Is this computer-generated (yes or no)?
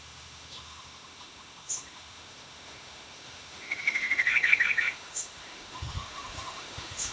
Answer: yes